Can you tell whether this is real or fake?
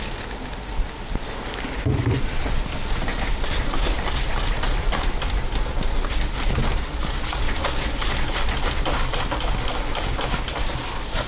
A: real